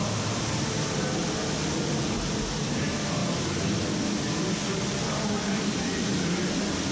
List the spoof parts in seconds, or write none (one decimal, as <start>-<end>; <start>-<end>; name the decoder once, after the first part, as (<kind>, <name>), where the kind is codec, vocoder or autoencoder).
0.0-1.2 (vocoder, BigVGAN v2); 2.1-3.2; 5.1-6.1